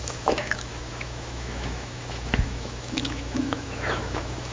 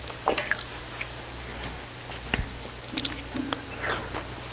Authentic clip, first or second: second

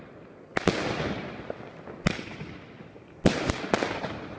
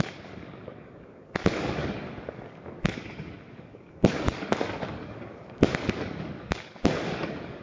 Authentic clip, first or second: first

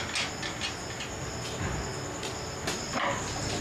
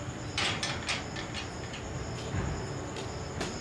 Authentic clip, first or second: first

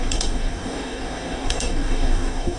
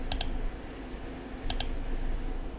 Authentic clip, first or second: second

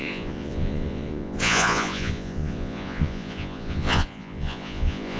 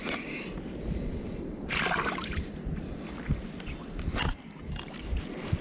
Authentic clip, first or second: second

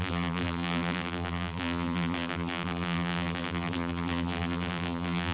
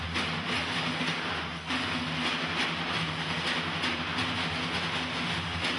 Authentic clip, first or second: second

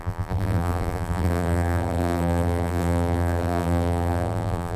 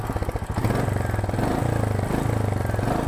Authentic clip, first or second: second